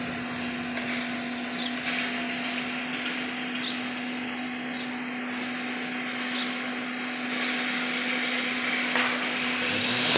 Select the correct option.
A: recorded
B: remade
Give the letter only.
A